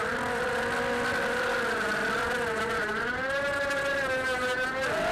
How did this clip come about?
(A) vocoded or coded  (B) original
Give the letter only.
B